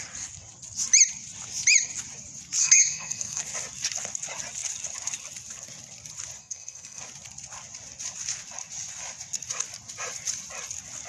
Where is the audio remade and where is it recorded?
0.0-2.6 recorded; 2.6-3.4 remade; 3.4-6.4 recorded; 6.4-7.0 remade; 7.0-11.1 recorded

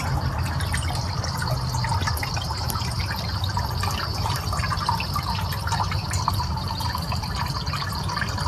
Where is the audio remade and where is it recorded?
0.0-2.2 recorded; 2.2-3.0 remade; 3.0-4.1 recorded; 4.1-7.5 remade; 7.5-8.5 recorded

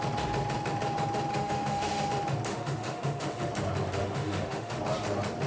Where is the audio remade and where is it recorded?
0.0-1.3 recorded; 1.3-2.1 remade; 2.1-2.5 recorded; 2.5-3.5 remade; 3.5-4.0 recorded; 4.0-4.8 remade; 4.8-5.5 recorded

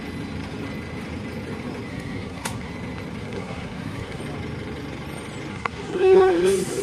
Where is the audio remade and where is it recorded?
0.0-1.9 recorded; 1.9-2.7 remade; 2.7-3.2 recorded; 3.2-4.2 remade; 4.2-5.5 recorded; 5.5-6.8 remade